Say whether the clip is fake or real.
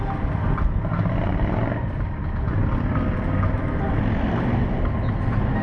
real